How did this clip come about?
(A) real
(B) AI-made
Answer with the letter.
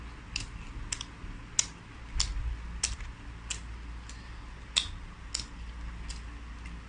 A